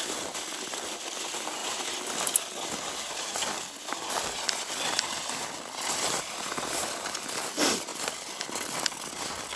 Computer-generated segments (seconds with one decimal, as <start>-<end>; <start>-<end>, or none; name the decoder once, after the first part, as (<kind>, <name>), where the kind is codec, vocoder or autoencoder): none